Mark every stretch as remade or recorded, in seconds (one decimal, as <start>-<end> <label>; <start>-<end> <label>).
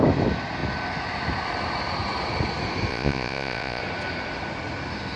0.0-2.9 recorded; 2.9-3.8 remade; 3.8-5.2 recorded